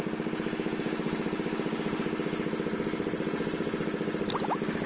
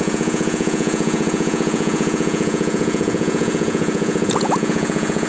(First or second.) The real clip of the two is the first